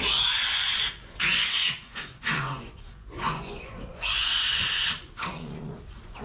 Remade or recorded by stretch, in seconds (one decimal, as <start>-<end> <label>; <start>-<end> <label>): 0.0-6.2 remade